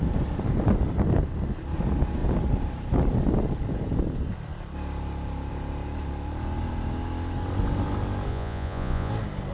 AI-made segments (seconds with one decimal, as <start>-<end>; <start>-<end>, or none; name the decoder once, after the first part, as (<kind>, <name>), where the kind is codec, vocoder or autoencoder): 8.3-9.1 (vocoder, Vocos)